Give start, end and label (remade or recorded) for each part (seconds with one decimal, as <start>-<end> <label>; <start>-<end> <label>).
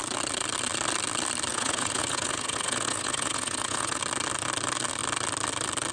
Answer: 0.0-1.5 recorded; 1.5-4.0 remade; 4.0-5.9 recorded